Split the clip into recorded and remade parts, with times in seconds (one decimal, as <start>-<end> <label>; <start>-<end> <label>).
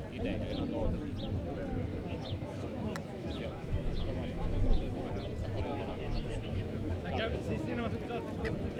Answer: 0.0-1.9 recorded; 1.9-5.1 remade; 5.1-5.7 recorded; 5.7-7.8 remade; 7.8-8.8 recorded